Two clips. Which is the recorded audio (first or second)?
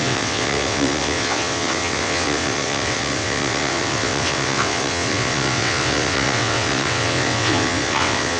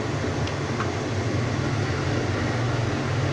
second